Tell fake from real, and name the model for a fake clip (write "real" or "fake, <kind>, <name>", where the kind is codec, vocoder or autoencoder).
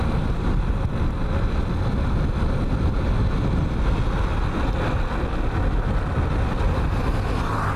real